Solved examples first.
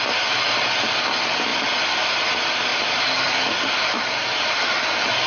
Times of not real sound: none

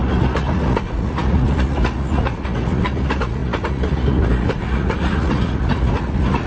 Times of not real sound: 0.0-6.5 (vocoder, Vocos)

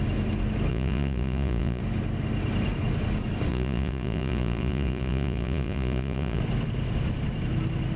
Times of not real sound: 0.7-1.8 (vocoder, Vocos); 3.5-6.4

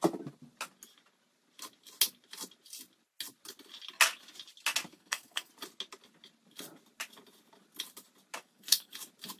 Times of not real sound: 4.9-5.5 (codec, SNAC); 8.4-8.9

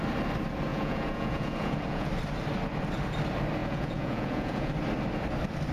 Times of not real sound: 0.7-2.1 (vocoder, Vocos); 3.6-4.7

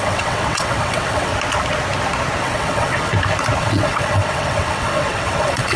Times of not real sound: 0.0-1.3 (vocoder, WaveNeXt); 2.4-3.1; 3.6-5.8

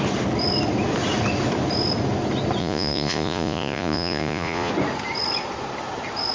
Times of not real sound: 2.6-4.7 (vocoder, Vocos)